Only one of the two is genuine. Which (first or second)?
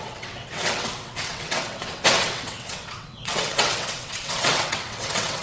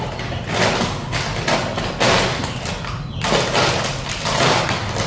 second